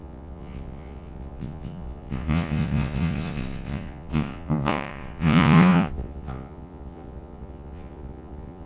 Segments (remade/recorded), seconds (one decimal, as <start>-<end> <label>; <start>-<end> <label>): 0.0-8.7 remade